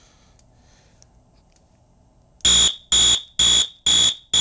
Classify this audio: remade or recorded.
recorded